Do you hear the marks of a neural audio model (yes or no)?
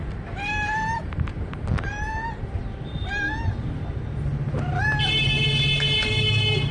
no